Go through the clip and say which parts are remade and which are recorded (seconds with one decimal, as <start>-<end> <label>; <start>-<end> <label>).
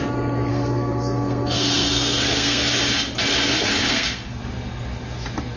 0.0-0.5 recorded; 0.5-2.7 remade; 2.7-3.9 recorded; 3.9-4.4 remade; 4.4-5.6 recorded